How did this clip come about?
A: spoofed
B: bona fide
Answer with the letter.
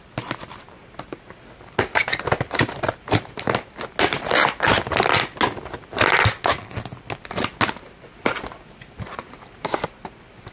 B